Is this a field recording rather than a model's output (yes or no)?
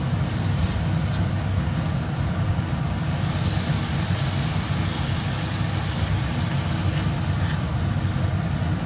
yes